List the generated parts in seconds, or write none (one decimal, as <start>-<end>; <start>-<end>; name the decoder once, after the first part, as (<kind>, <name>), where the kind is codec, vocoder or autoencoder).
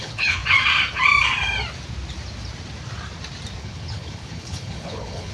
0.0-0.4 (codec, HILCodec); 3.6-5.3